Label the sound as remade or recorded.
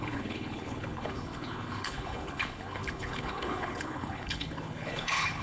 remade